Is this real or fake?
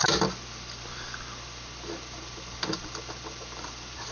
fake